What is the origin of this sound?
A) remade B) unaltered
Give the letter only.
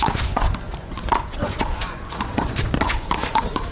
A